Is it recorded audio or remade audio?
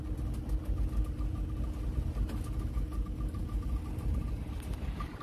recorded